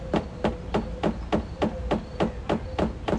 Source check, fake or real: real